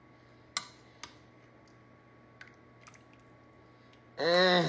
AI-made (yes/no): no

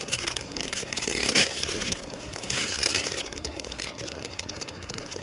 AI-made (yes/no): yes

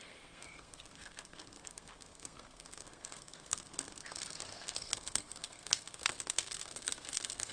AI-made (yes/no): yes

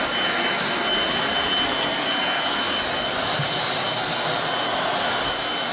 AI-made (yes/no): no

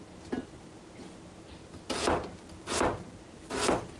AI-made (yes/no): no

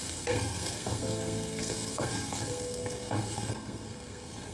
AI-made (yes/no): yes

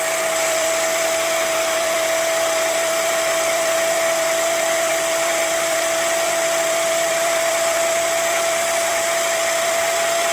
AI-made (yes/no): yes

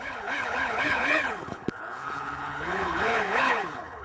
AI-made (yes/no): yes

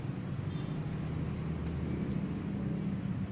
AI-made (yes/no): no